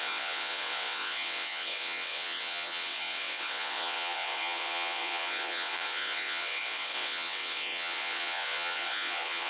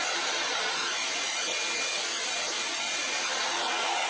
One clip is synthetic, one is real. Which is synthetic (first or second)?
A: first